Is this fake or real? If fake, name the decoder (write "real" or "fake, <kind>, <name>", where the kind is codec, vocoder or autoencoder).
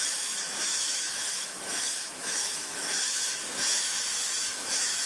fake, autoencoder, DAC-VAE